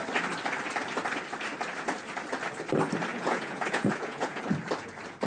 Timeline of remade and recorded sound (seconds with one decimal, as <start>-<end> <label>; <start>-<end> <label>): 0.0-3.1 recorded; 3.1-4.4 remade; 4.4-5.3 recorded